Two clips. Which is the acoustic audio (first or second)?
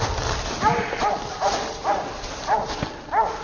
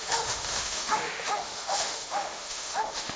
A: first